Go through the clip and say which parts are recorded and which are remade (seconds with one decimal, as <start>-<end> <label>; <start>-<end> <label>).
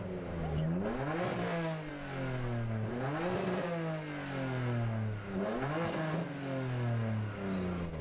0.0-8.0 recorded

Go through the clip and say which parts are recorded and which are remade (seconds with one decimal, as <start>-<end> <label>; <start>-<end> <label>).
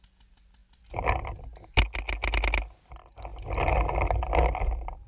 0.0-5.1 recorded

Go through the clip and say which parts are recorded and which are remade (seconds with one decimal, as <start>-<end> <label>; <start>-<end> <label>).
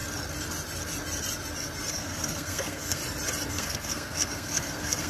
0.0-1.9 recorded; 1.9-3.0 remade; 3.0-3.5 recorded; 3.5-5.1 remade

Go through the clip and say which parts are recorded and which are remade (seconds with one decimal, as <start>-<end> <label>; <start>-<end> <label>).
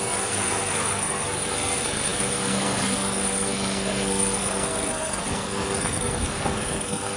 0.0-7.2 remade